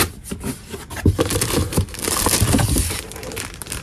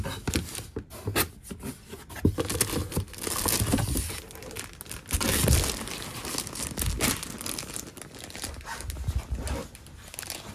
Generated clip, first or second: first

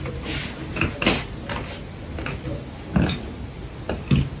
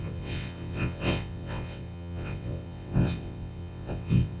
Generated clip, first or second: second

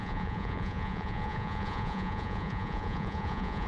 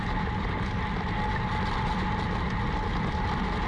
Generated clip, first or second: first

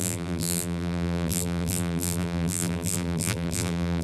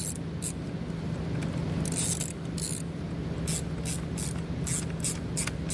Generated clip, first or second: first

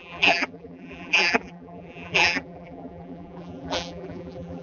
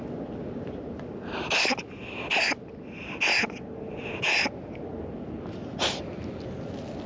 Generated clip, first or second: first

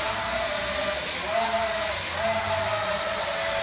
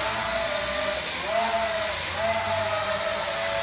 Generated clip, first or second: first